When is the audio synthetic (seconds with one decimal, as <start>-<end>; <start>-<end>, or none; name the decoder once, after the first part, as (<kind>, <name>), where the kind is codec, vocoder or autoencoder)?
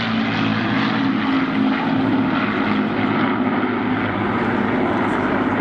none